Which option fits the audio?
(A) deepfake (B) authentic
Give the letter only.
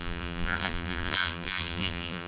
A